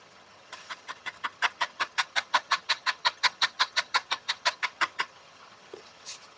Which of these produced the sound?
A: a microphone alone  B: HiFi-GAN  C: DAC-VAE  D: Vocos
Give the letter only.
B